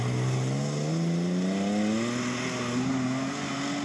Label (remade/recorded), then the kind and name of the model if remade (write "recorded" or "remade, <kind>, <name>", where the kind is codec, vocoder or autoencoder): recorded